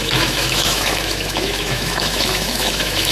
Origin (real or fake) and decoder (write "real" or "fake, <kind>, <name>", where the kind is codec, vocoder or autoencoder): fake, autoencoder, DAC-VAE